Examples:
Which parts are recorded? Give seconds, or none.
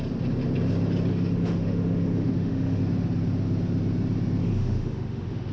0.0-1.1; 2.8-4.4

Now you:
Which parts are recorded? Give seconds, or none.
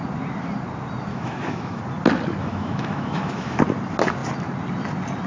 0.0-1.1; 1.8-2.4; 3.6-5.3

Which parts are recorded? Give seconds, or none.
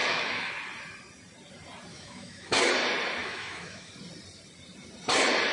0.5-1.9; 2.7-3.2; 3.9-5.5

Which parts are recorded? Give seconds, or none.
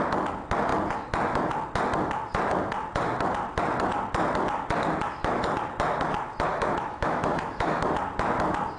0.0-6.5; 7.8-8.8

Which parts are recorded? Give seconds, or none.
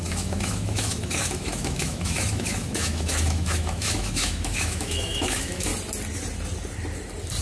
5.7-7.4